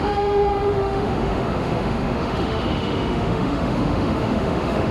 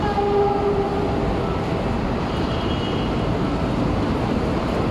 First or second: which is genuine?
second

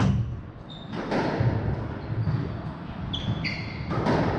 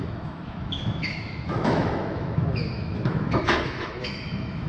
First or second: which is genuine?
first